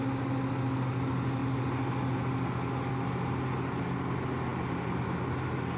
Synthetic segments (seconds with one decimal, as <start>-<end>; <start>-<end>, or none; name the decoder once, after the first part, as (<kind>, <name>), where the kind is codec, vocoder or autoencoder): none